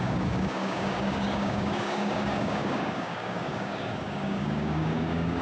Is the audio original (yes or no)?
no